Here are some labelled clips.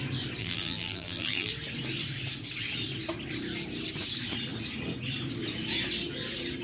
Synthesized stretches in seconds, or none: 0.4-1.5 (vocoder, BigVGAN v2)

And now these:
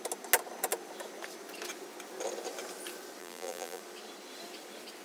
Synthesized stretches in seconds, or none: 3.2-3.8 (vocoder, BigVGAN v2)

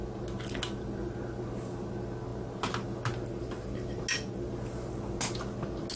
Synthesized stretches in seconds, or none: none

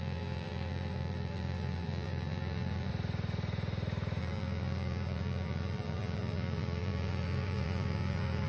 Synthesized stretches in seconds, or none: 0.0-2.9 (vocoder, BigVGAN v2); 4.2-8.5

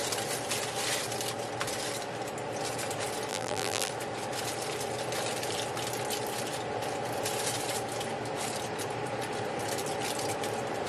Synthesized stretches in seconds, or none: 3.3-3.9 (vocoder, BigVGAN v2)

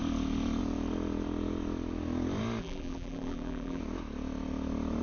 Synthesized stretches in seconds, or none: 2.6-3.8 (vocoder, BigVGAN v2)

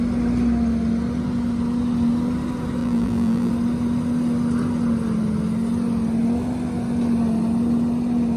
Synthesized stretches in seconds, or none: 2.8-3.5 (vocoder, BigVGAN v2)